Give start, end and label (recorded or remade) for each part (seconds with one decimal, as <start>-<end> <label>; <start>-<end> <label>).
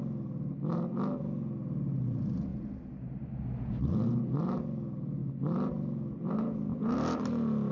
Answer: 0.0-7.7 recorded